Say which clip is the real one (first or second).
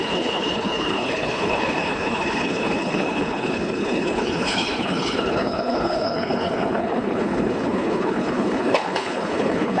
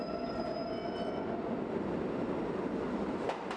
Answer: second